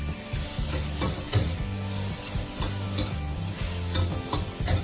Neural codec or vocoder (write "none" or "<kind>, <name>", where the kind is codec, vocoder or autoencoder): none